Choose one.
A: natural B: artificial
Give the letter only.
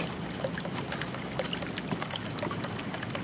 A